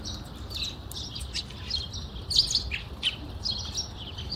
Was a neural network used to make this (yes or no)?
no